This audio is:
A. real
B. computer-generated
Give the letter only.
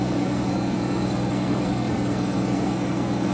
B